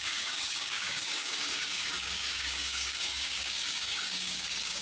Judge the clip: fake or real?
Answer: fake